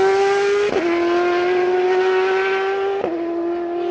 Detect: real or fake real